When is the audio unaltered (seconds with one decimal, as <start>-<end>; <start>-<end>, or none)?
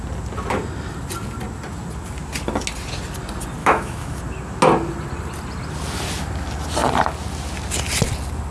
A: 0.0-3.6; 4.2-8.5